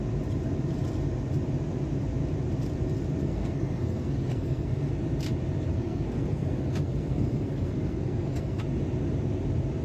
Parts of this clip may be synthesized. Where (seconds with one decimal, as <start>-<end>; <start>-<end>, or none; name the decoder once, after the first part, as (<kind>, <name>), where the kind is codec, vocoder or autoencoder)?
3.2-4.9 (codec, SNAC); 5.7-8.6